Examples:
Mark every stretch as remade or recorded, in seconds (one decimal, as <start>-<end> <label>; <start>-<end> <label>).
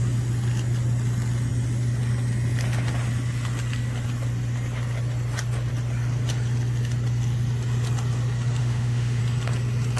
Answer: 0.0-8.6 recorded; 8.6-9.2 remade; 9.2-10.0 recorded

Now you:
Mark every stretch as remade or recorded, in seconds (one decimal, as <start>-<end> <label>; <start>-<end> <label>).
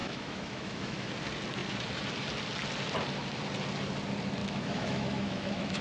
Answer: 0.0-1.1 remade; 1.1-4.4 recorded; 4.4-5.8 remade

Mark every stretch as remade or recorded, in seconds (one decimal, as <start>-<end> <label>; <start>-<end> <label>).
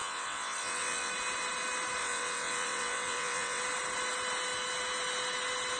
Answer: 0.0-1.1 remade; 1.1-2.0 recorded; 2.0-3.6 remade; 3.6-5.8 recorded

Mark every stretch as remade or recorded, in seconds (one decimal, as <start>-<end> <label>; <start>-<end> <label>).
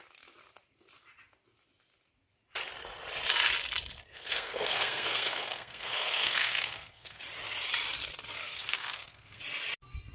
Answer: 0.0-4.1 recorded; 4.1-7.2 remade; 7.2-8.4 recorded; 8.4-9.4 remade; 9.4-10.1 recorded